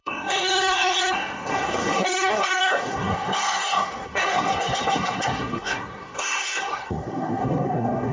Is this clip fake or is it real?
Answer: fake